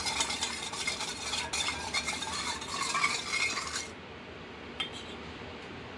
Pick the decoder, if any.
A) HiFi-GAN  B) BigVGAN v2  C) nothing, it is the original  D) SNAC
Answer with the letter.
B